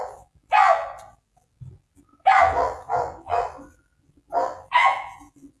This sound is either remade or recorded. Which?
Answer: remade